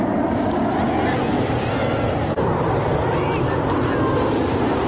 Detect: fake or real real